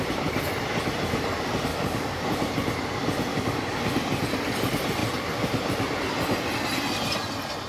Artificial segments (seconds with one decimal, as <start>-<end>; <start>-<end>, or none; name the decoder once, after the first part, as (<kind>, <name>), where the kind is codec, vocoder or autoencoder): 1.7-2.2 (codec, DAC); 3.3-3.8